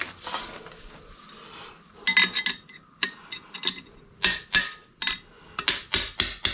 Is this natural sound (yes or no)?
yes